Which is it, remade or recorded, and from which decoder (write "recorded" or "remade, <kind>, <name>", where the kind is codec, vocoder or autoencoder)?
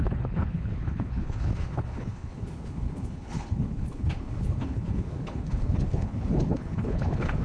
remade, codec, HILCodec